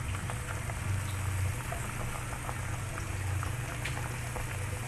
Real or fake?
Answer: real